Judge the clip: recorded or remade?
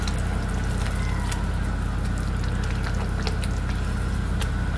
recorded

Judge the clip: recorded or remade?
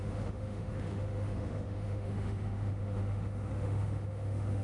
remade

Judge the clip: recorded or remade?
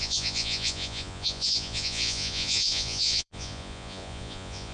remade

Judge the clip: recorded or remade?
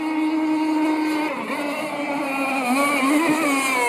recorded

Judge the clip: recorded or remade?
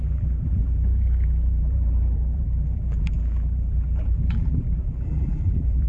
remade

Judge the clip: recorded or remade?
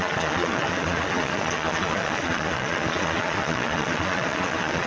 remade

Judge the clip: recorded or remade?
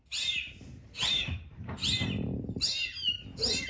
recorded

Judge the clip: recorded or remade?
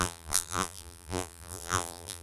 remade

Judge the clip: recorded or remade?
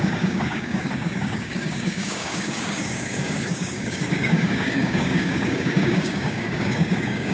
remade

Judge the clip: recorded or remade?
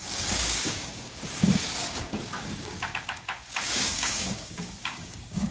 remade